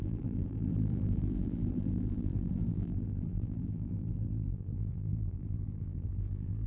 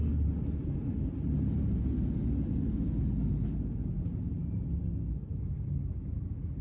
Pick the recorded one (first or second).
second